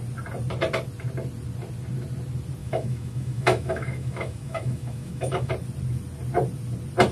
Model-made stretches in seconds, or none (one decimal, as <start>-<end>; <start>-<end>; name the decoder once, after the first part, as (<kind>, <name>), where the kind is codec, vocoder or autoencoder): 2.6-5.5 (autoencoder, DAC-VAE)